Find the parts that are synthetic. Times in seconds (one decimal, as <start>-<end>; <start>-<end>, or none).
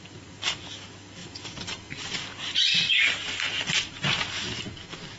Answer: none